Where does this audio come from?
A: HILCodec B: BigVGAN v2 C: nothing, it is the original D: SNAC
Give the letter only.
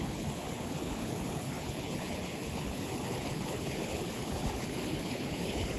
A